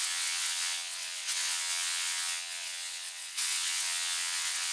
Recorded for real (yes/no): no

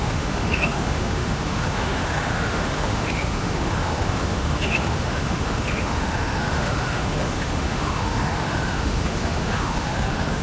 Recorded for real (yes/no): no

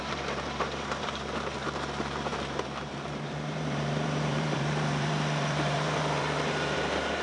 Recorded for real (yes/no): no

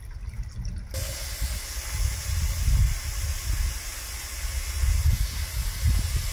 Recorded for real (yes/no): yes